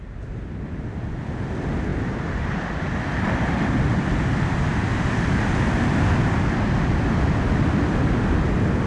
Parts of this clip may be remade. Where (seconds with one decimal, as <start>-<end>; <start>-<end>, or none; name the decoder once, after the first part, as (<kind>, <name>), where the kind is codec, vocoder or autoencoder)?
none